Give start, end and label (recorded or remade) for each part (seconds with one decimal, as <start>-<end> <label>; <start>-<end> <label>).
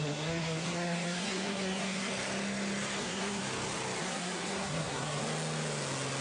0.0-2.1 remade; 2.1-3.0 recorded; 3.0-3.4 remade; 3.4-4.0 recorded; 4.0-5.2 remade; 5.2-6.2 recorded